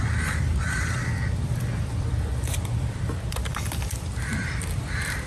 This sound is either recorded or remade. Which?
remade